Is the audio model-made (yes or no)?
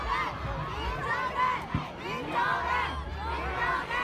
no